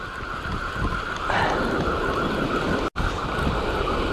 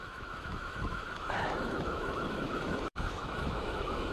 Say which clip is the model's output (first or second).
second